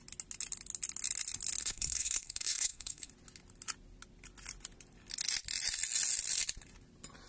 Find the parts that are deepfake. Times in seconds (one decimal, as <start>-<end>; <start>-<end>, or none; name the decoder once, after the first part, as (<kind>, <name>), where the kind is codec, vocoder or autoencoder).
1.6-3.1 (codec, SNAC)